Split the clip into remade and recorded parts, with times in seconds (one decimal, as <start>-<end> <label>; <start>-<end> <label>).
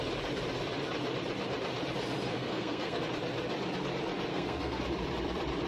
0.0-2.3 recorded; 2.3-3.0 remade; 3.0-4.3 recorded; 4.3-4.8 remade; 4.8-5.7 recorded